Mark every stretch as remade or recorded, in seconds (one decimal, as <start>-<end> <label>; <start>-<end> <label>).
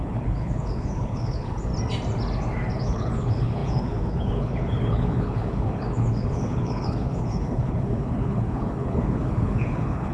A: 0.0-1.7 remade; 1.7-2.8 recorded; 2.8-10.1 remade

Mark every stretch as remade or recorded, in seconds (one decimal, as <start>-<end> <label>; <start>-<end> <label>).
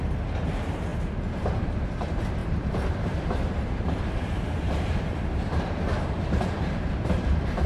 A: 0.0-0.9 remade; 0.9-1.9 recorded; 1.9-7.7 remade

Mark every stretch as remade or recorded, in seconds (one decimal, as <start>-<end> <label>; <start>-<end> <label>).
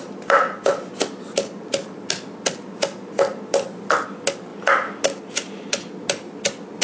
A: 0.0-6.8 recorded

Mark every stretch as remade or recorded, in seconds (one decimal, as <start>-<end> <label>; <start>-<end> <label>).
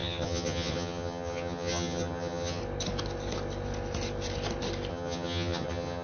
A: 0.0-2.6 remade; 2.6-4.9 recorded; 4.9-6.0 remade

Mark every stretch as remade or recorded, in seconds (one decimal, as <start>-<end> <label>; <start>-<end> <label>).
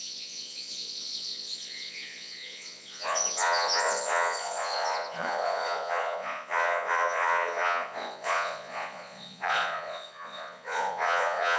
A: 0.0-11.6 remade